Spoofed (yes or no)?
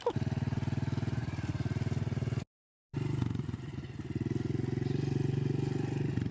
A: no